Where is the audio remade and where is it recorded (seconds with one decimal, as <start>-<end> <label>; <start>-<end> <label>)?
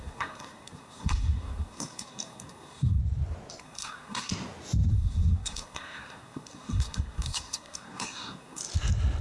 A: 0.0-3.0 remade; 3.0-3.6 recorded; 3.6-4.3 remade; 4.3-4.9 recorded; 4.9-8.6 remade; 8.6-9.2 recorded